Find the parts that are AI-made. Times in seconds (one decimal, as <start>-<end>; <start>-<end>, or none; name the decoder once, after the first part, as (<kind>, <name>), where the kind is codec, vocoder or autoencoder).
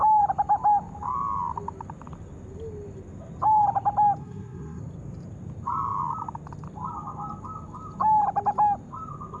4.2-4.8 (codec, SNAC)